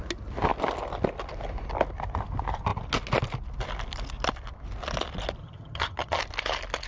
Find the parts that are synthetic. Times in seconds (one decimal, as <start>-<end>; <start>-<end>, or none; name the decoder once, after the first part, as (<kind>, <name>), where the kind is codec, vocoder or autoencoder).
5.4-6.2 (vocoder, HiFi-GAN)